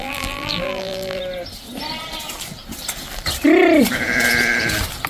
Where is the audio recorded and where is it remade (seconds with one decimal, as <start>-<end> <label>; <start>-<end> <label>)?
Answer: 0.0-1.2 remade; 1.2-5.1 recorded

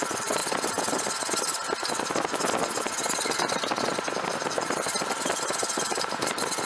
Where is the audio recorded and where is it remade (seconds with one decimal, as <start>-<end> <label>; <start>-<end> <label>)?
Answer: 0.0-0.4 remade; 0.4-4.2 recorded; 4.2-6.7 remade

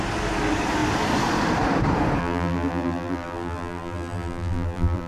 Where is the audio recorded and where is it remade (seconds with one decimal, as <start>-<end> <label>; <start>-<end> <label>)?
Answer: 0.0-2.2 recorded; 2.2-5.1 remade